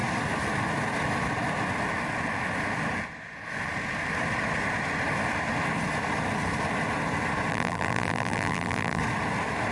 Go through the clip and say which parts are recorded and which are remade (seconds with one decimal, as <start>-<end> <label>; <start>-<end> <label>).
0.0-7.5 recorded; 7.5-9.0 remade; 9.0-9.7 recorded